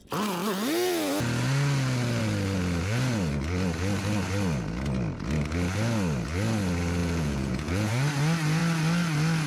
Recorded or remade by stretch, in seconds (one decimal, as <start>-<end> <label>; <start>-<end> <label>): 0.0-7.0 recorded; 7.0-7.9 remade; 7.9-9.5 recorded